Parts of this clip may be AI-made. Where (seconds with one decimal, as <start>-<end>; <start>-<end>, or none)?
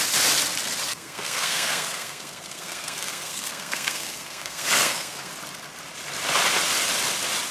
0.9-5.3